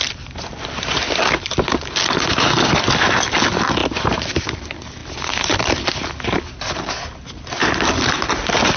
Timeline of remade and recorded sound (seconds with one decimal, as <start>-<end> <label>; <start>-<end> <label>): 0.0-8.8 recorded